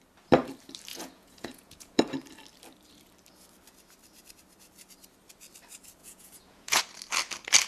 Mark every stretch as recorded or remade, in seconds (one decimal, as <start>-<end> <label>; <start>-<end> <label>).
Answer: 0.0-0.9 recorded; 0.9-2.0 remade; 2.0-6.0 recorded; 6.0-6.8 remade; 6.8-7.7 recorded